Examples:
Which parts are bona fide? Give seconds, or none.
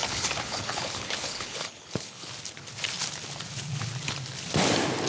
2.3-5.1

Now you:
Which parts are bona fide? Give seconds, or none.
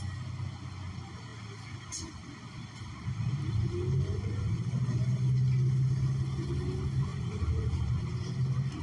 0.0-7.1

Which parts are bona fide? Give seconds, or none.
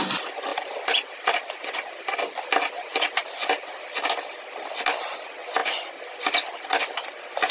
0.0-7.5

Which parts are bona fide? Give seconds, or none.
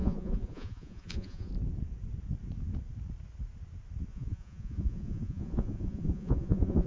1.5-4.1